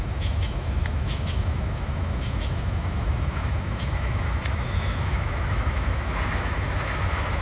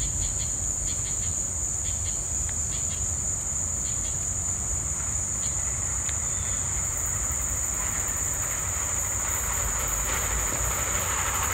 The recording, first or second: second